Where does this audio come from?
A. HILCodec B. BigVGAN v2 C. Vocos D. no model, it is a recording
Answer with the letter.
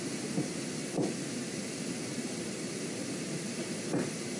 D